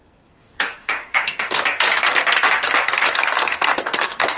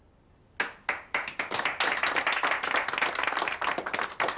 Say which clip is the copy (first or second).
first